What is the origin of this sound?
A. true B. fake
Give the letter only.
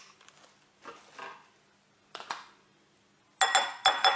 A